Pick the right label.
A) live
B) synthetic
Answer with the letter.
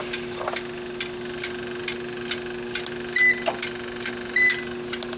A